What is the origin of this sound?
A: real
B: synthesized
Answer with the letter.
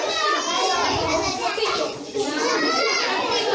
B